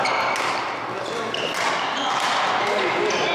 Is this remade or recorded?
recorded